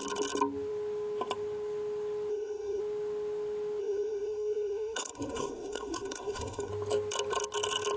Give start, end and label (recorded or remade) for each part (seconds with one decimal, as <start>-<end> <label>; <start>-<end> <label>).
0.0-2.3 recorded; 2.3-2.8 remade; 2.8-3.8 recorded; 3.8-6.7 remade; 6.7-8.0 recorded